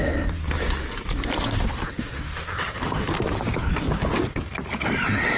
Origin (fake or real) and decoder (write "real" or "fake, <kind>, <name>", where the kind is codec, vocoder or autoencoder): real